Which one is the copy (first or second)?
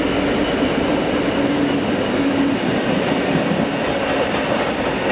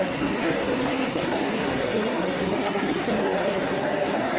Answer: second